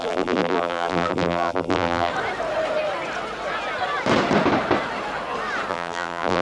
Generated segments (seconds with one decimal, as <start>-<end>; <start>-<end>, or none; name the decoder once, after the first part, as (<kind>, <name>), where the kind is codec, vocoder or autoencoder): 0.0-2.1 (vocoder, BigVGAN v2); 5.7-6.4

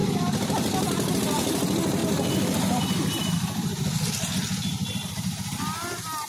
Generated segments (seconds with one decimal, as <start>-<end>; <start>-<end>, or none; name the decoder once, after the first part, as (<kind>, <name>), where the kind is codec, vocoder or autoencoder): 2.0-2.8 (vocoder, BigVGAN v2); 3.2-4.1; 4.8-5.4

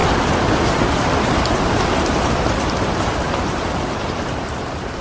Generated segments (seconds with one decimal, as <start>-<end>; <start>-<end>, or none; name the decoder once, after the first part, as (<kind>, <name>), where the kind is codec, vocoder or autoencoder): none

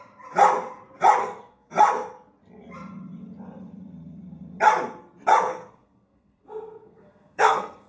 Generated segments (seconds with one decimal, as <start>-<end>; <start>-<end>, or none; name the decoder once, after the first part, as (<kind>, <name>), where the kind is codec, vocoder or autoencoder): 1.2-1.7 (codec, SNAC); 5.5-7.9

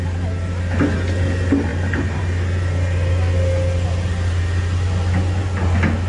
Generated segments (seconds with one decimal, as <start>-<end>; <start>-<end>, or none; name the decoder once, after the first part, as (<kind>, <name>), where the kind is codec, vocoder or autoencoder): 1.7-2.2 (vocoder, BigVGAN v2)